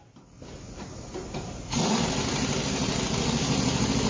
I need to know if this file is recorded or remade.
recorded